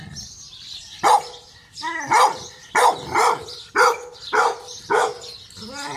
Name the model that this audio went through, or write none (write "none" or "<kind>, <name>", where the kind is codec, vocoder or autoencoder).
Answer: vocoder, BigVGAN v2